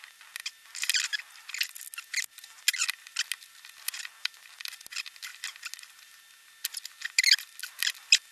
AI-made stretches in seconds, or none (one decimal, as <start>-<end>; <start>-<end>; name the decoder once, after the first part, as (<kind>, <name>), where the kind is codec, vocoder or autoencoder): none